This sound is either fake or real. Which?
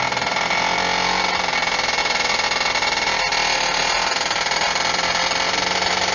real